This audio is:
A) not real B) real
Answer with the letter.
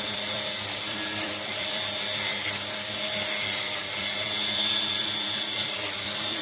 A